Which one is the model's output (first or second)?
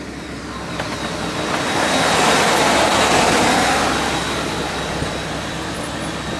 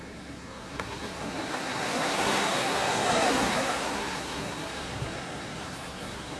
second